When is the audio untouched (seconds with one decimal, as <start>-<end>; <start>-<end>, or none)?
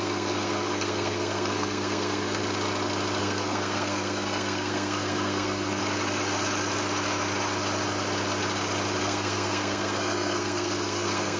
2.4-3.2; 5.8-9.0